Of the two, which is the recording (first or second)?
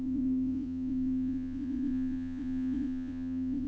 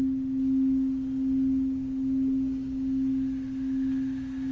second